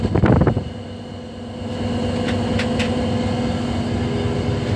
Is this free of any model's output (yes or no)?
yes